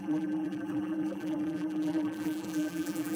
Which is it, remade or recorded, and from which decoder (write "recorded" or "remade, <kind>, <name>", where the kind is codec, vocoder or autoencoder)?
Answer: remade, vocoder, BigVGAN v2